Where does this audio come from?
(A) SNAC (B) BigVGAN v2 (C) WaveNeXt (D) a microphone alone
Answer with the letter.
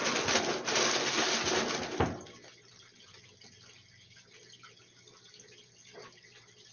D